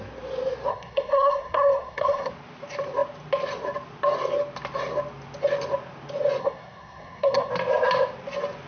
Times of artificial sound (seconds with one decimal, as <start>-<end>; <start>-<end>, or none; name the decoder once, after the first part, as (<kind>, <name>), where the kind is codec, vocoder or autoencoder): 0.7-2.3 (codec, SNAC); 6.4-7.5